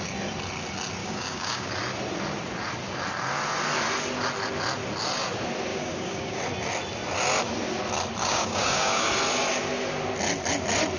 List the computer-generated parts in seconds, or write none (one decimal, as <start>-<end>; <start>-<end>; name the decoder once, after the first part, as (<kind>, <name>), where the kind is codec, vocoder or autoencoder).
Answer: 1.0-1.7 (codec, DAC); 5.7-6.4; 8.2-9.1